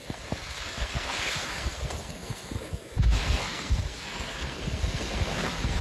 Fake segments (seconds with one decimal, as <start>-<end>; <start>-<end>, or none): 0.0-5.8